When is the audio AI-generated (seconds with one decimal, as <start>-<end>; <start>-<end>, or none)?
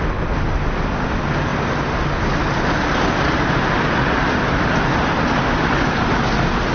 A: none